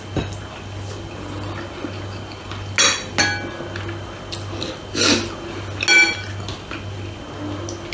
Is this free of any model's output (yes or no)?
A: yes